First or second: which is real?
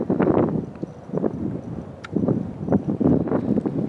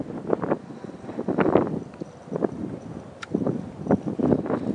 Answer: first